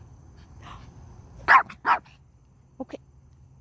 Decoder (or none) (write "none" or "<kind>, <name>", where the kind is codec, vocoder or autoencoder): none